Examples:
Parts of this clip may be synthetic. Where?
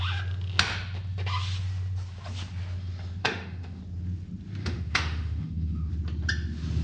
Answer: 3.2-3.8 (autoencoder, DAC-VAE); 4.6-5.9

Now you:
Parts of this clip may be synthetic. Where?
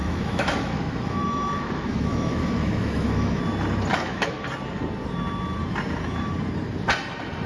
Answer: 0.0-3.4 (autoencoder, DAC-VAE); 3.9-4.4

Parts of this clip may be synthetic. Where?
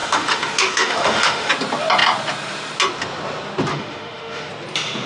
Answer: 0.0-1.5 (autoencoder, DAC-VAE); 3.7-4.5